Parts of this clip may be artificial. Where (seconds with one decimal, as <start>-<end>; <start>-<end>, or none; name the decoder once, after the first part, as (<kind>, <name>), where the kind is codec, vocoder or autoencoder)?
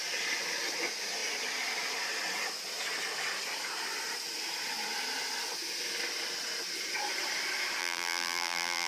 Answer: 7.8-8.9 (vocoder, BigVGAN v2)